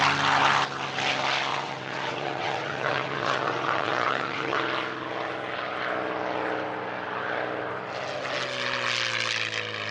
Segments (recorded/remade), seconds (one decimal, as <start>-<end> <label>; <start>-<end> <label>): 0.0-1.5 recorded; 1.5-4.6 remade; 4.6-9.9 recorded